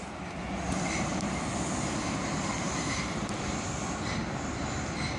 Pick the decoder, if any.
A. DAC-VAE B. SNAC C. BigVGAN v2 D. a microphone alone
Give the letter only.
D